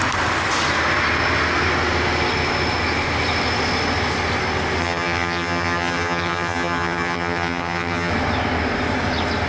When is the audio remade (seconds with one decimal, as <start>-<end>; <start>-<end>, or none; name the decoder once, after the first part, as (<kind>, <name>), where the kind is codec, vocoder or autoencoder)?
4.8-8.1 (vocoder, HiFi-GAN)